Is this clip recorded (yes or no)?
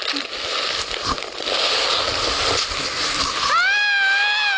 yes